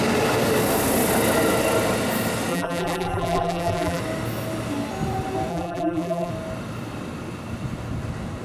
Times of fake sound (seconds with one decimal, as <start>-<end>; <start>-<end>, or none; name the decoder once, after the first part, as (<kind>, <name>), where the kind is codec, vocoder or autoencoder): 2.5-4.0 (vocoder, BigVGAN v2); 5.5-6.3